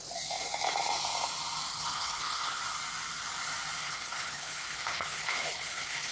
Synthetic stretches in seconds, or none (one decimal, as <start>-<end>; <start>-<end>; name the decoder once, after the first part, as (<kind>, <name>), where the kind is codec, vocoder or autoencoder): 1.7-2.6 (codec, HILCodec); 3.8-6.1